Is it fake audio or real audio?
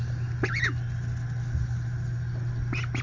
real